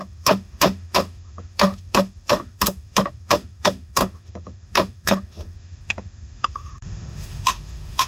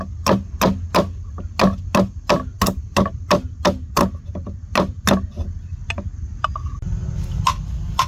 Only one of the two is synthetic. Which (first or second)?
first